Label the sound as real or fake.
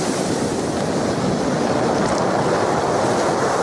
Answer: real